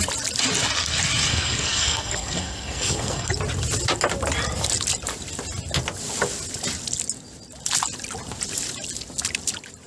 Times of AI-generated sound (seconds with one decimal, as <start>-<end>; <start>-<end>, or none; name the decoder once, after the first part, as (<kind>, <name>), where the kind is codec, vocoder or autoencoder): 1.3-3.3 (codec, SNAC)